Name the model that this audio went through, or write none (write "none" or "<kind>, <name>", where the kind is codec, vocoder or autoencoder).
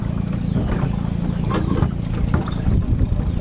none